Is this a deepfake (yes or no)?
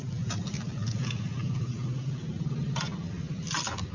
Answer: no